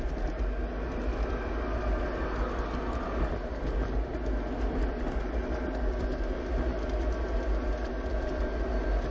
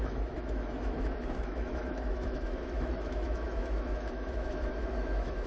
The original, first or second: first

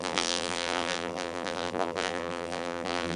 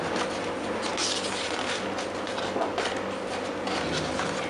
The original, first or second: second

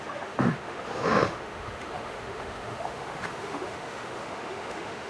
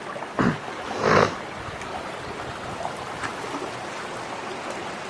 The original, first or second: second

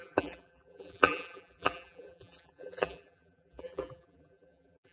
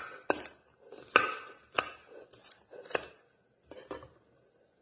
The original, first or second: second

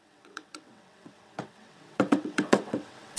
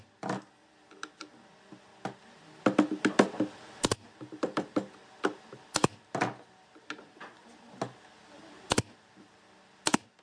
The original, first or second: second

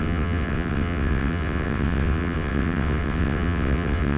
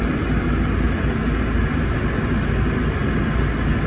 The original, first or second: second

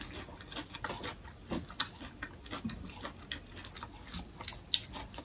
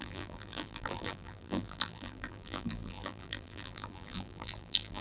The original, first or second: first